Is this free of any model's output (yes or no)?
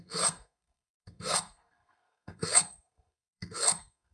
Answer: no